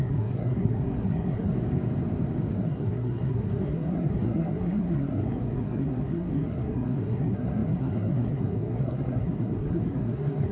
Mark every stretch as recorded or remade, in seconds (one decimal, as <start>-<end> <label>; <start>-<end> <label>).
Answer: 0.0-1.5 remade; 1.5-2.5 recorded; 2.5-10.5 remade